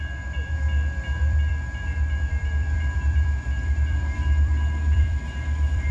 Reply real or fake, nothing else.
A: fake